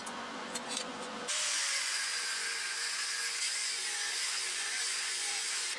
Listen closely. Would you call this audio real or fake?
fake